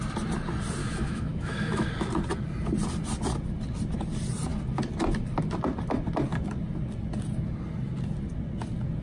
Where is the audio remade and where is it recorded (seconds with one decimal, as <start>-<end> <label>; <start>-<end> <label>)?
0.0-0.8 recorded; 0.8-1.9 remade; 1.9-9.0 recorded

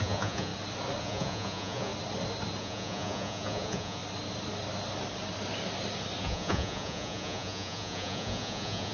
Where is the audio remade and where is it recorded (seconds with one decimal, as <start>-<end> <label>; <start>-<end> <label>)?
0.0-0.5 remade; 0.5-1.0 recorded; 1.0-1.9 remade; 1.9-2.6 recorded; 2.6-4.0 remade; 4.0-6.2 recorded; 6.2-8.9 remade

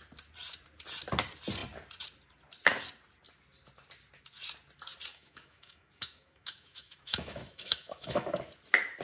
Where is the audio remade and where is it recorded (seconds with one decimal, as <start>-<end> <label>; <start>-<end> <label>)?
0.0-5.1 recorded; 5.1-8.4 remade; 8.4-9.0 recorded

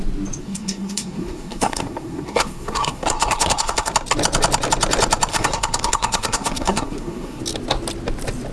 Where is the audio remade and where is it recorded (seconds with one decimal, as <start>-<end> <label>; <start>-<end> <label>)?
0.0-0.4 recorded; 0.4-3.9 remade; 3.9-5.3 recorded; 5.3-7.4 remade; 7.4-8.5 recorded

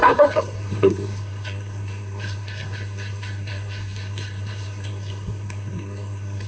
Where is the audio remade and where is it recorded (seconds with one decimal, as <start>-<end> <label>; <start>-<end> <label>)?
0.0-6.5 remade

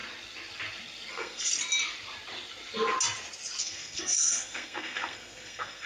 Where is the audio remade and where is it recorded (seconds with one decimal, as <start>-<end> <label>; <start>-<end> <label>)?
0.0-1.1 recorded; 1.1-1.5 remade; 1.5-3.6 recorded; 3.6-5.9 remade

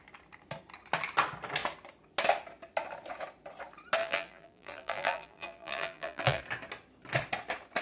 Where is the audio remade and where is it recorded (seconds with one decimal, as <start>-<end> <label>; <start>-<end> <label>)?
0.0-4.0 recorded; 4.0-6.4 remade; 6.4-7.8 recorded